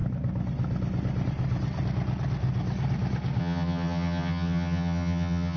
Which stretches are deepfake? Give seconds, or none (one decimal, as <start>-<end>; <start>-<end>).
3.4-5.6